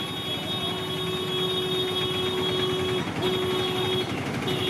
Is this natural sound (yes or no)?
yes